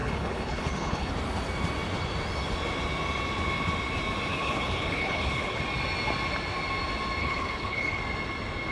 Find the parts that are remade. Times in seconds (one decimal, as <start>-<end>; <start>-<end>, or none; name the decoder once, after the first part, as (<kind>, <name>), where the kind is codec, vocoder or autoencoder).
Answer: 0.0-1.1 (codec, HILCodec); 4.3-5.6; 7.2-8.0